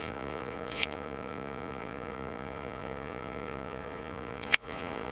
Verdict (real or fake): fake